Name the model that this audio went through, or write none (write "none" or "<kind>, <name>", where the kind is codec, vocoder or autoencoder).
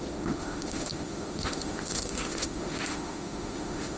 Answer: autoencoder, DAC-VAE